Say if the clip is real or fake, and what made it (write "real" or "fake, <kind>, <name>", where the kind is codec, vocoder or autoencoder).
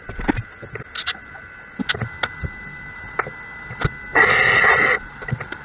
real